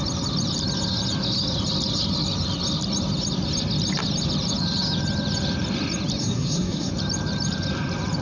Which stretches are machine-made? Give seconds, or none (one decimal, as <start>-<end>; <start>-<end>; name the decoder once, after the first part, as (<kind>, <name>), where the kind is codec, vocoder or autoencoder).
6.2-6.9 (codec, SNAC)